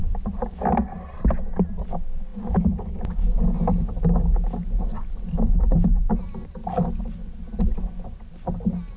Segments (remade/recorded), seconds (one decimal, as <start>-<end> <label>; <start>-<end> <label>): 0.0-9.0 recorded